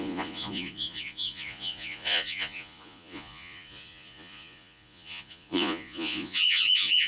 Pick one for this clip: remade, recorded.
remade